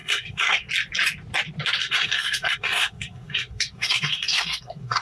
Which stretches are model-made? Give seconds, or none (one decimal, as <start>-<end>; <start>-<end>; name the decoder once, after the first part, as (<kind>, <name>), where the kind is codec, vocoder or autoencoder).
0.0-0.7 (codec, SNAC); 1.8-5.0